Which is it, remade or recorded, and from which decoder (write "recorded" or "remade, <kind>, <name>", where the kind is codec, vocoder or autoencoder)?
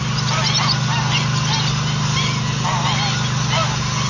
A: recorded